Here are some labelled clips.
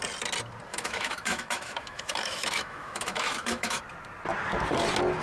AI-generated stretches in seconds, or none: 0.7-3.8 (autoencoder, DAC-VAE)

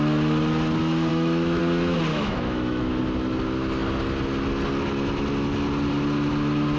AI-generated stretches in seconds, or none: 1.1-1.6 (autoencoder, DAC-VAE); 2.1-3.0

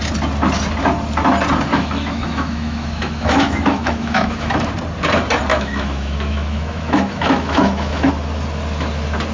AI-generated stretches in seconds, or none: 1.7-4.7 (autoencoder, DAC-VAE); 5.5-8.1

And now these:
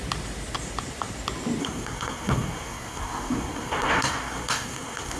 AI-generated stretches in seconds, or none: 1.6-5.2 (codec, SNAC)